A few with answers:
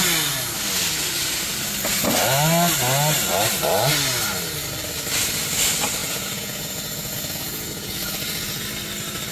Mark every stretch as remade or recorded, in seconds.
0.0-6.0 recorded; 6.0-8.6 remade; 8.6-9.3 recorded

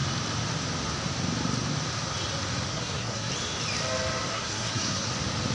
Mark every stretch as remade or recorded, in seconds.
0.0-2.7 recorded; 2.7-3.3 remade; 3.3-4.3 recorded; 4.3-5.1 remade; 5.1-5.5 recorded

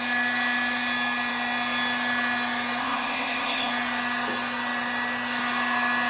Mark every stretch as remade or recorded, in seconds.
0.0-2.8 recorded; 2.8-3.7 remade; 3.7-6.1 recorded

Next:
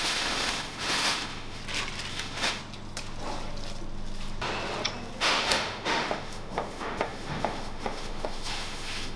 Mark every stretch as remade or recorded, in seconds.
0.0-1.6 remade; 1.6-2.1 recorded; 2.1-2.6 remade; 2.6-5.2 recorded; 5.2-9.2 remade